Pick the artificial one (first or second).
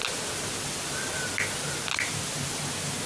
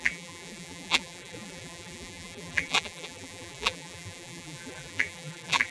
second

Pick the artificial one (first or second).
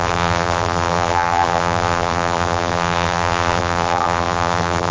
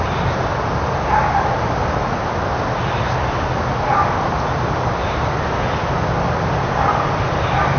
first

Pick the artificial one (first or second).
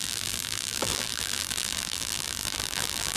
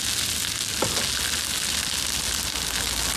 first